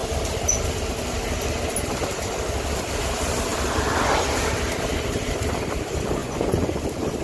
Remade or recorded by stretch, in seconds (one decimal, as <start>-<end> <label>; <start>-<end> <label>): 0.0-6.2 recorded; 6.2-6.8 remade; 6.8-7.2 recorded